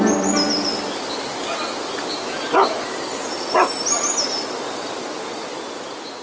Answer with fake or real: real